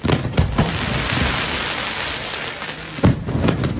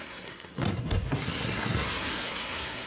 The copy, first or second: second